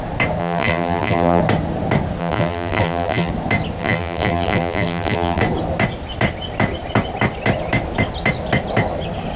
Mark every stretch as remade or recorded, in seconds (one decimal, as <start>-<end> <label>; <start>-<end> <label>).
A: 0.0-0.4 recorded; 0.4-1.4 remade; 1.4-2.2 recorded; 2.2-3.3 remade; 3.3-3.8 recorded; 3.8-5.4 remade; 5.4-9.4 recorded